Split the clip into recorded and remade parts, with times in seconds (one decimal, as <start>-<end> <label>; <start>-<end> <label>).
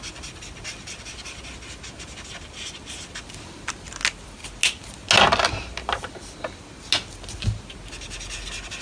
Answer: 0.0-8.8 recorded